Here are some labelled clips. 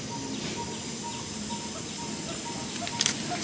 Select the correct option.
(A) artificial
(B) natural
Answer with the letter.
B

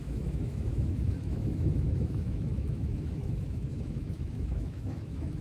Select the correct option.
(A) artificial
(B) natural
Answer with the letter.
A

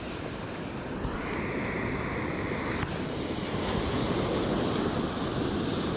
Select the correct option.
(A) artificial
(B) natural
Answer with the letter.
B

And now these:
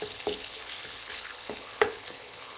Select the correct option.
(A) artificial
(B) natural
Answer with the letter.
A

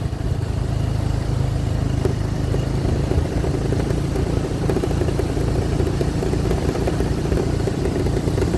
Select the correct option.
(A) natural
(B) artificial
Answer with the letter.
A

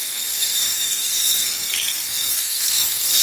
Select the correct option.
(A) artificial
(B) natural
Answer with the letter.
A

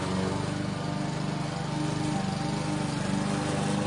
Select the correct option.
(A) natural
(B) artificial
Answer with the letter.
A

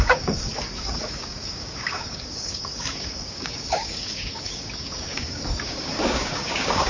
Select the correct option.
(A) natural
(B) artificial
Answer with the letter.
B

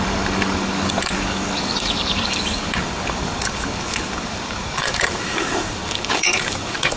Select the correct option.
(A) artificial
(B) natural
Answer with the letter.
A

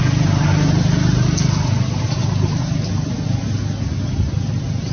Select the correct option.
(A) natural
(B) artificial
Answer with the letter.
A